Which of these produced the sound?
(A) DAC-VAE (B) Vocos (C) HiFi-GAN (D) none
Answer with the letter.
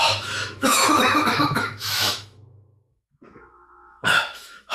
A